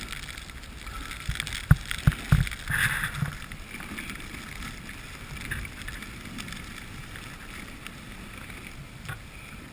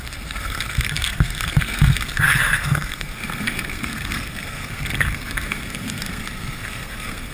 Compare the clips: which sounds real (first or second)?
first